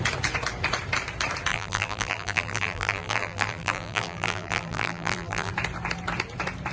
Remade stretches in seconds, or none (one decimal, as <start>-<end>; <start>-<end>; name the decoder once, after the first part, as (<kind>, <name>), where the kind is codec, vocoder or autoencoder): 1.5-5.5 (vocoder, BigVGAN v2)